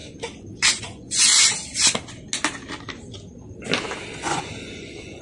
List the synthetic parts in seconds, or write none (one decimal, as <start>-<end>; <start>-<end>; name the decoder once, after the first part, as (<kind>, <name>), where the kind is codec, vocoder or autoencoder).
0.8-1.3 (vocoder, Vocos); 4.2-5.2